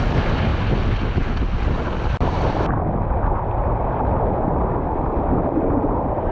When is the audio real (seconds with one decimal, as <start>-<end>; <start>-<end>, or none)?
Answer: 0.0-6.3